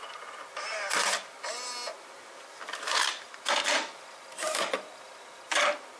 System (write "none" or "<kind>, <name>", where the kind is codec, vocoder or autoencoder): none